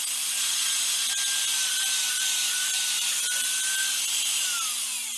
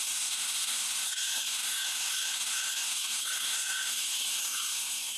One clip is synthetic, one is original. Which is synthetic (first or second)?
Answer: second